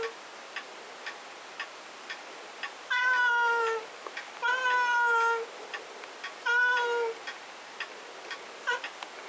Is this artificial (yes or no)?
no